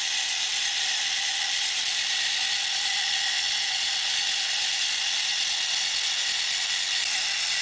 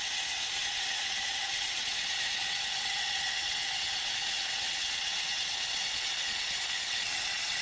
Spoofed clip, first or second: second